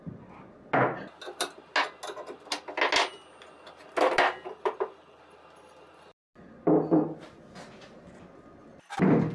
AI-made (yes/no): no